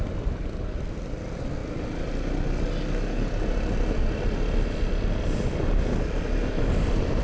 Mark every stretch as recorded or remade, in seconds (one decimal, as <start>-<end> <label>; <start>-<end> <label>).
0.0-7.2 recorded